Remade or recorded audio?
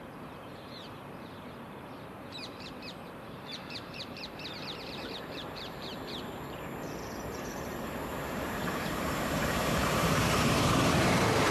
remade